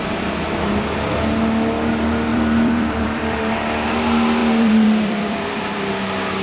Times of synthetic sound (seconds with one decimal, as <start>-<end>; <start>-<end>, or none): 2.3-3.4; 4.4-5.9